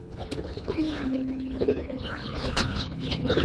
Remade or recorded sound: remade